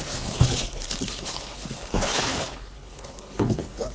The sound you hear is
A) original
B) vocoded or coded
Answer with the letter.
B